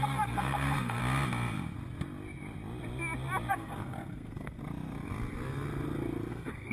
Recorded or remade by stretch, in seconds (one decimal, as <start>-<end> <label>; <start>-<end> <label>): 0.0-1.0 remade; 1.0-3.5 recorded; 3.5-4.6 remade; 4.6-6.3 recorded; 6.3-6.7 remade